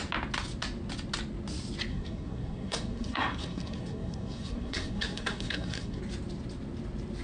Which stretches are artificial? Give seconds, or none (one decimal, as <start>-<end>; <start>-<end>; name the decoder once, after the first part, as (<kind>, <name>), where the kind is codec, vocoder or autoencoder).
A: 1.9-6.0 (codec, SNAC)